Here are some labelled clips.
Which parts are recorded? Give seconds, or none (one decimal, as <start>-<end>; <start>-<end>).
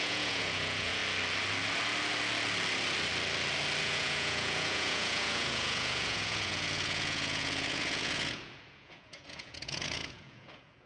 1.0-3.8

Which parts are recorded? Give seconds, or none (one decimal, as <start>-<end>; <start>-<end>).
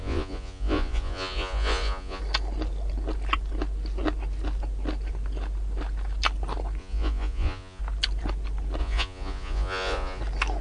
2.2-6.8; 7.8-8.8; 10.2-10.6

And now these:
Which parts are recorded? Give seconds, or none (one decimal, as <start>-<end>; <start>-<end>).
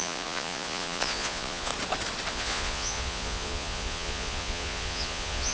1.7-2.3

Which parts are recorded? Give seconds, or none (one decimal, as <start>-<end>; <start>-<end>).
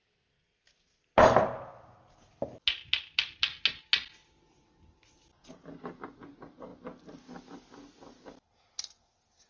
0.0-9.5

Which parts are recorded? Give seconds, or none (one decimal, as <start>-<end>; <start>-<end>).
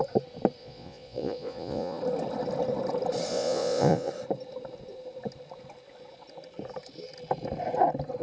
0.0-0.6; 2.0-3.3; 4.1-8.2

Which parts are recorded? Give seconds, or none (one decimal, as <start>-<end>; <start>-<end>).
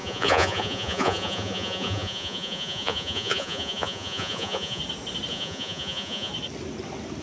4.8-5.3; 6.3-7.2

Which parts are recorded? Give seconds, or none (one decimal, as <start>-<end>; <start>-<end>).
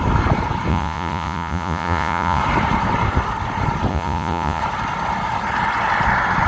0.0-0.7; 2.4-3.9; 4.6-6.5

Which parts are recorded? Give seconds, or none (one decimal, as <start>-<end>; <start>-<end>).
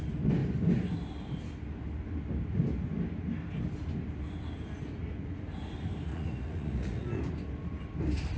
0.0-6.1; 7.2-8.4